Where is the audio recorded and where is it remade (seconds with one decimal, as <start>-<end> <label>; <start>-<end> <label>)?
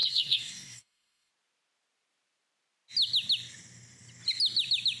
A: 0.0-1.3 remade; 1.3-5.0 recorded